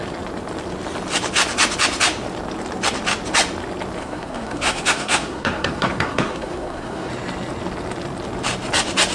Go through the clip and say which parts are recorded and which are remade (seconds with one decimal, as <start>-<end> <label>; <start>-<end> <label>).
0.0-4.0 recorded; 4.0-7.1 remade; 7.1-9.1 recorded